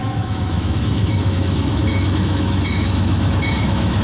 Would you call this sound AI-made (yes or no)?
yes